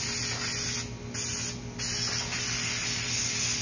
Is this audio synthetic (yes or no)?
no